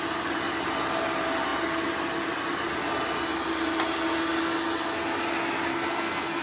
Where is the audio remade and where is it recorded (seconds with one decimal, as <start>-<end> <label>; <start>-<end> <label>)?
0.0-5.7 recorded; 5.7-6.4 remade